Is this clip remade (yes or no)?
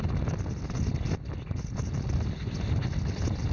no